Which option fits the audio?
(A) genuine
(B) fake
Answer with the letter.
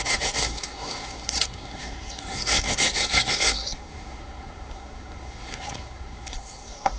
B